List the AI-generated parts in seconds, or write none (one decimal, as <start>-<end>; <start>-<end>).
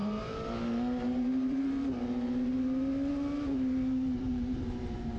0.0-5.2